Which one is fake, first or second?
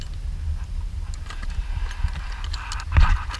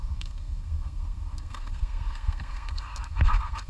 second